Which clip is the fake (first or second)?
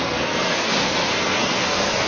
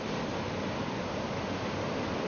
first